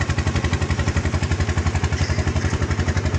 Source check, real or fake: fake